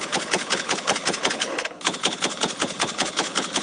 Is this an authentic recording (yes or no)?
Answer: no